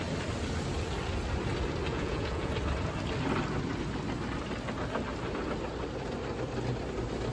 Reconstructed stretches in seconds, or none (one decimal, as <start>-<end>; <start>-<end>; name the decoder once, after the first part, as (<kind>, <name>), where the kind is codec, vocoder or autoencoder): 1.9-2.5 (vocoder, Vocos)